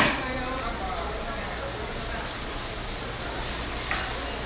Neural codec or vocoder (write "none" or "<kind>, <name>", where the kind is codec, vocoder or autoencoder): none